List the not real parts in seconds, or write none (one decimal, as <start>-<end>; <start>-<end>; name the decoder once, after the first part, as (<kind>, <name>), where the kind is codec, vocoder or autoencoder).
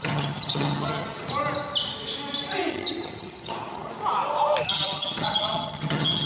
0.0-1.2 (vocoder, HiFi-GAN); 2.7-3.9; 4.7-6.3